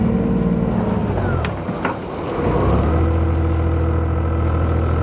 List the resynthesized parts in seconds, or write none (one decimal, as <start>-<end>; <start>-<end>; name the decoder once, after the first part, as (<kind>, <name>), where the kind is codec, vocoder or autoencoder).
none